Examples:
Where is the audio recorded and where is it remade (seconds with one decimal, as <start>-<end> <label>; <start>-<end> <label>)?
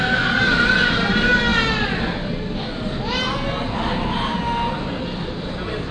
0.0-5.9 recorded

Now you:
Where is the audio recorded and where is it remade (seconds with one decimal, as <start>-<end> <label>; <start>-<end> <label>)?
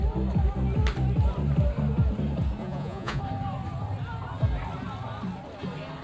0.0-2.6 recorded; 2.6-3.2 remade; 3.2-6.0 recorded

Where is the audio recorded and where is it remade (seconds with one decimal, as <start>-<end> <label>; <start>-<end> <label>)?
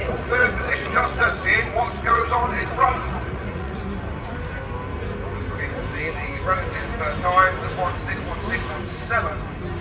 0.0-3.8 remade; 3.8-9.8 recorded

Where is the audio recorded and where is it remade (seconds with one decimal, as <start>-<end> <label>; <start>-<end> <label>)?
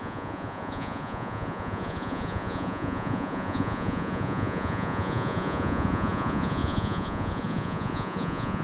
0.0-8.6 remade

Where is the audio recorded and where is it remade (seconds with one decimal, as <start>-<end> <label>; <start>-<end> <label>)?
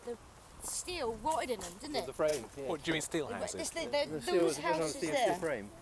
0.0-2.3 recorded; 2.3-3.0 remade; 3.0-4.4 recorded; 4.4-5.3 remade; 5.3-5.8 recorded